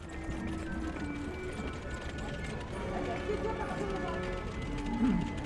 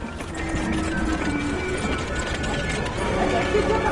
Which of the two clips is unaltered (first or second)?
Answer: first